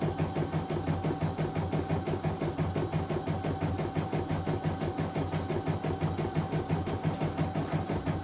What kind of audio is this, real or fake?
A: real